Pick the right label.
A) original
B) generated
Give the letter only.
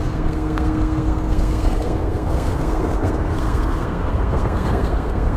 B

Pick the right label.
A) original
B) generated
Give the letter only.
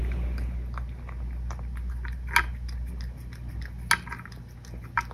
A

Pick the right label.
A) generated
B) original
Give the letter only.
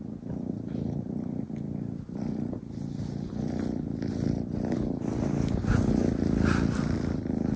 B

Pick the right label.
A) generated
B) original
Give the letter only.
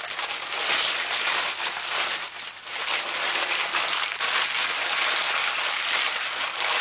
B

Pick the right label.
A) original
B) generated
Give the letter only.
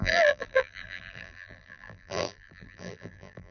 B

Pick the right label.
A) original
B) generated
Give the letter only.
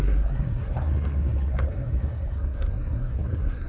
B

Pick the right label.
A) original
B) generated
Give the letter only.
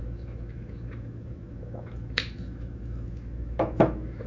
B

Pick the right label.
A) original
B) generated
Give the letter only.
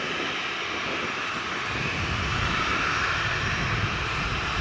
A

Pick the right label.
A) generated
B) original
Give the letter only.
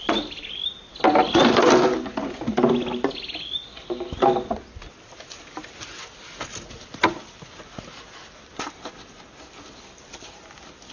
B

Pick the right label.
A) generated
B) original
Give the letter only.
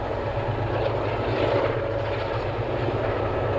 B